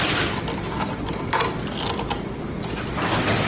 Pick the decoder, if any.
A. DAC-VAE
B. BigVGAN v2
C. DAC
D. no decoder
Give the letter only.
D